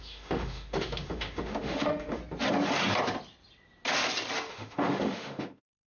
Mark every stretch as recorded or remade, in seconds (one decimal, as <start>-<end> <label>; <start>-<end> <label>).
0.0-2.2 remade; 2.2-4.5 recorded; 4.5-5.9 remade